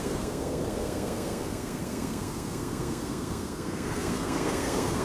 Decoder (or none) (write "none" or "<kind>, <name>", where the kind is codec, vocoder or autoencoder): codec, SNAC